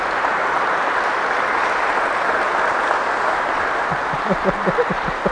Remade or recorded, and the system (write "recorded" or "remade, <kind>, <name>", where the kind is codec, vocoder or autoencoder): recorded